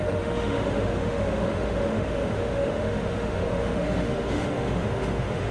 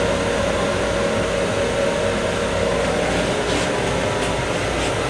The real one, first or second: second